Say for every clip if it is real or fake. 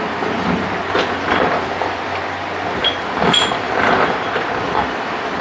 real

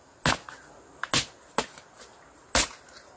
real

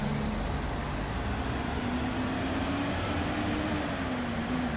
real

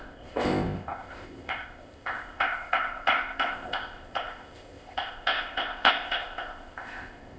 fake